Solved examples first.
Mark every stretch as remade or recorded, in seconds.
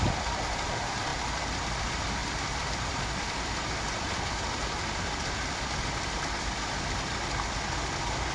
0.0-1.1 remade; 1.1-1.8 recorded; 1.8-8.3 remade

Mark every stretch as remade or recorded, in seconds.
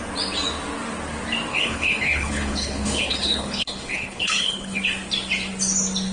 0.0-1.5 recorded; 1.5-4.8 remade; 4.8-6.1 recorded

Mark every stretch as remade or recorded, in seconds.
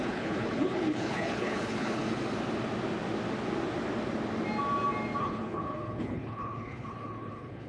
0.0-2.0 remade; 2.0-5.2 recorded; 5.2-7.7 remade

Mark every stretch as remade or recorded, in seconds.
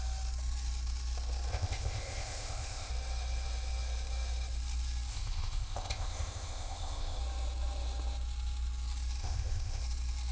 0.0-1.5 recorded; 1.5-2.9 remade; 2.9-5.1 recorded; 5.1-7.2 remade; 7.2-9.2 recorded; 9.2-9.8 remade; 9.8-10.3 recorded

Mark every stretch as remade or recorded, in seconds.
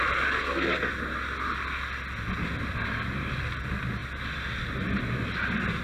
0.0-0.4 recorded; 0.4-0.9 remade; 0.9-5.8 recorded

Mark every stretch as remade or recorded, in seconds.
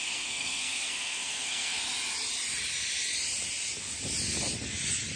0.0-1.8 remade; 1.8-5.2 recorded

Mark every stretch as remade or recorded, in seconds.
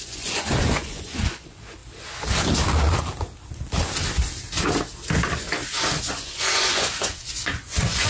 0.0-1.8 remade; 1.8-6.0 recorded; 6.0-8.1 remade